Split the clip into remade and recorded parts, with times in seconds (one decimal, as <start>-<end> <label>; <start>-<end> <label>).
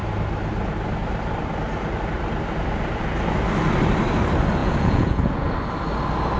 0.0-4.6 recorded; 4.6-5.5 remade; 5.5-6.4 recorded